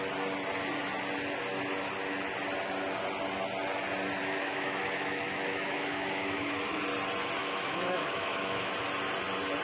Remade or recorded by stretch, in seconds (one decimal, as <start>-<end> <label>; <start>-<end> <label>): 0.0-4.2 recorded; 4.2-6.8 remade; 6.8-7.4 recorded; 7.4-8.7 remade; 8.7-9.6 recorded